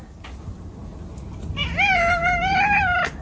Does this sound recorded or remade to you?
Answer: recorded